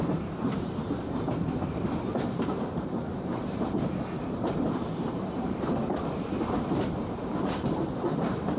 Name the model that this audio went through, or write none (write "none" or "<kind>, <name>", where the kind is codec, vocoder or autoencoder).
vocoder, BigVGAN v2